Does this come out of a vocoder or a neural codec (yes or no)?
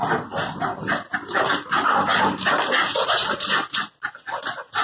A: no